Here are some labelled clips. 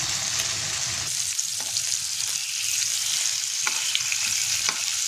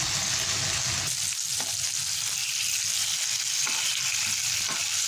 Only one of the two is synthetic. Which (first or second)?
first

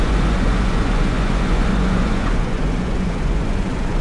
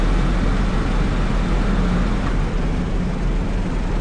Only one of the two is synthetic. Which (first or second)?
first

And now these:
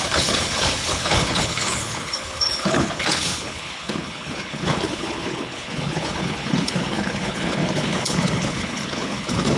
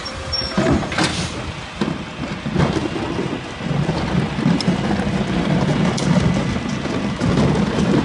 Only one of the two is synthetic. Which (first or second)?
first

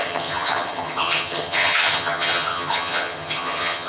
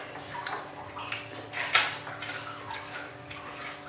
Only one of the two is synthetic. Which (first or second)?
first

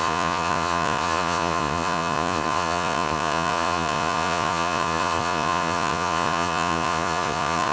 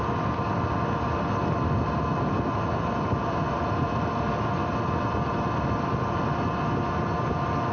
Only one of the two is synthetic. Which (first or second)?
first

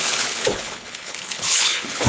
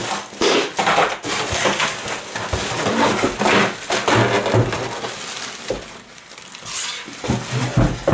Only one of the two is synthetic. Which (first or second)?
first